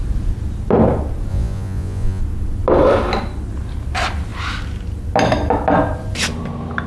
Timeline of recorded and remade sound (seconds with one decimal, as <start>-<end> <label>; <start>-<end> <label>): 0.0-1.3 recorded; 1.3-2.2 remade; 2.2-6.9 recorded